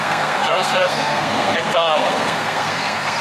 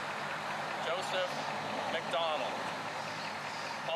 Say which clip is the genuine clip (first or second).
second